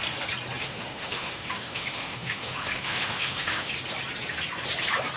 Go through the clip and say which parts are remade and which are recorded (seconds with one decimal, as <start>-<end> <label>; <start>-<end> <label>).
0.0-0.6 recorded; 0.6-3.7 remade; 3.7-5.2 recorded